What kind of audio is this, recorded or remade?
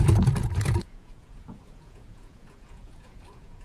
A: remade